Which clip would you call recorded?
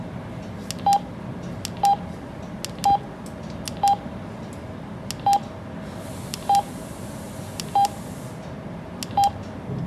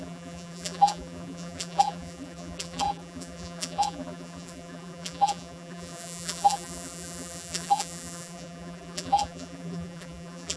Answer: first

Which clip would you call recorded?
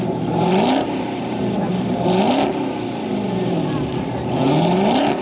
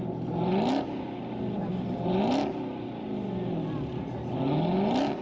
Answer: second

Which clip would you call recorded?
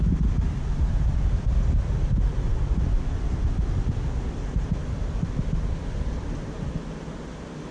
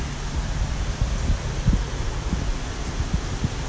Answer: second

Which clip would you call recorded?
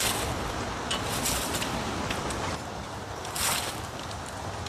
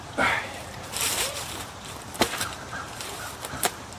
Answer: first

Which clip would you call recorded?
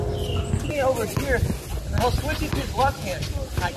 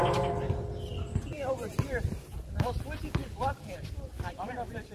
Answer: first